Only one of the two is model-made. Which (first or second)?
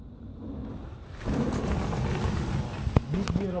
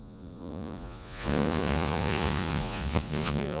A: second